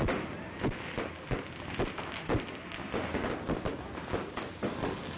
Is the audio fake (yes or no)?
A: no